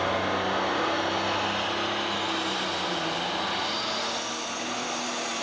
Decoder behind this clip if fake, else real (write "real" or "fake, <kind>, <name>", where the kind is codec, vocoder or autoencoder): real